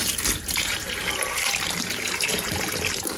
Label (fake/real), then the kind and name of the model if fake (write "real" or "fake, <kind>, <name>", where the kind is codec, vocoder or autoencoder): fake, vocoder, BigVGAN v2